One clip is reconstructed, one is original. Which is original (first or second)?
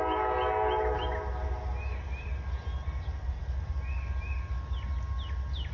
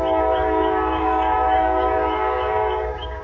first